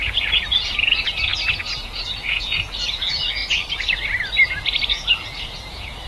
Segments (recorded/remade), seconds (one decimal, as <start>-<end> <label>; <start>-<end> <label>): 0.0-3.4 remade; 3.4-4.9 recorded; 4.9-6.1 remade